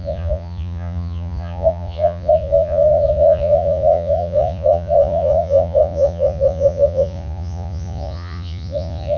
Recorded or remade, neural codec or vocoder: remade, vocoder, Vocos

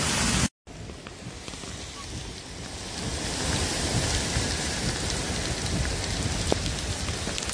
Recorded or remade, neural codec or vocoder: recorded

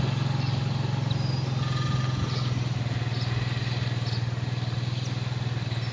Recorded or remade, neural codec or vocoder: recorded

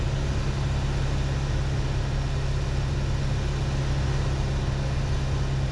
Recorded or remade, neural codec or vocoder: recorded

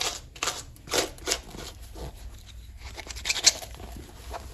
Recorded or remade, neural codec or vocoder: recorded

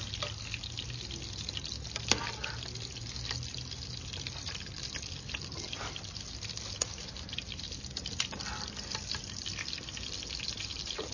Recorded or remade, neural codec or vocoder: recorded